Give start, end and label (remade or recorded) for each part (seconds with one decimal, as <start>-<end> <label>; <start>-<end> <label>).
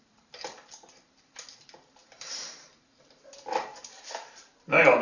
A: 0.0-5.0 remade